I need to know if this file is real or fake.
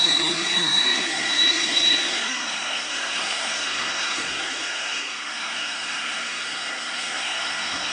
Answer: fake